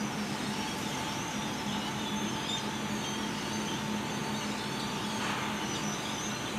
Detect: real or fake real